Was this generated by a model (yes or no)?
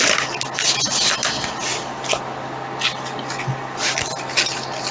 no